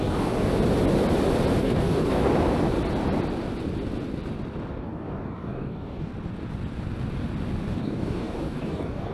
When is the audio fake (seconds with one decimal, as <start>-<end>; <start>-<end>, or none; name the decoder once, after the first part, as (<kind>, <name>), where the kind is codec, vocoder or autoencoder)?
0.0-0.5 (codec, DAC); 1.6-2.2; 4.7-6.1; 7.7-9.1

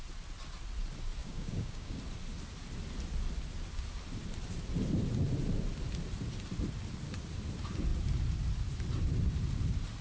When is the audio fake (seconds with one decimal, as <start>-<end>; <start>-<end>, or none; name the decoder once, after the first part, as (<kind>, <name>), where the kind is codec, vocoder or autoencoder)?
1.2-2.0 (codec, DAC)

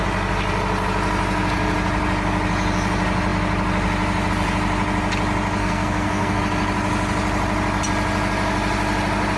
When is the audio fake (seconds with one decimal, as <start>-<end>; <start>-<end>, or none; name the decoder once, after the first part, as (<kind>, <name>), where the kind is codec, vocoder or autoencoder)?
5.6-6.4 (codec, SNAC)

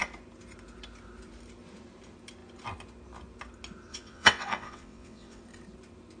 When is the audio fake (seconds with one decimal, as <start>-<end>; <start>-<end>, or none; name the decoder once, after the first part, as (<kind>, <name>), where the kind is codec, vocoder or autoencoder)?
3.9-5.4 (vocoder, WaveNeXt)